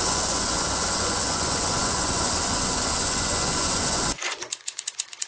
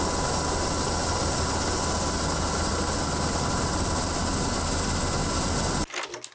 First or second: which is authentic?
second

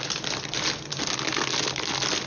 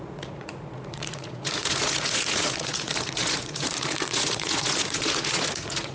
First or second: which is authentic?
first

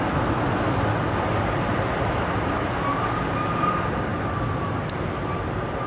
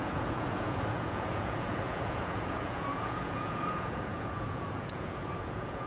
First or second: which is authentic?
first